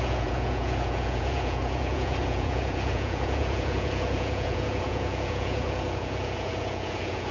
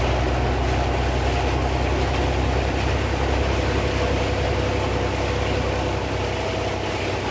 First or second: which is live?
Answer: second